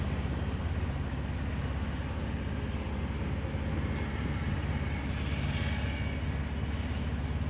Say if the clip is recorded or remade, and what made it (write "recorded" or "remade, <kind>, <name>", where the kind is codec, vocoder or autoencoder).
recorded